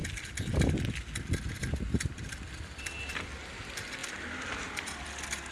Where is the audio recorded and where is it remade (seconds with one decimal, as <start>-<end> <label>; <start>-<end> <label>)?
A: 0.0-0.8 remade; 0.8-1.6 recorded; 1.6-3.4 remade; 3.4-4.0 recorded; 4.0-5.0 remade; 5.0-5.5 recorded